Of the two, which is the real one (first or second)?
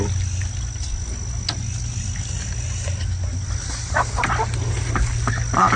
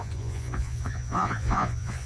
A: first